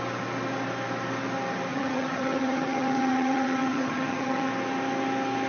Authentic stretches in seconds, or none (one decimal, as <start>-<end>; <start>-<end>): 0.0-1.7; 4.5-5.5